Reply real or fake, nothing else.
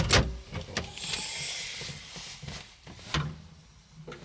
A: real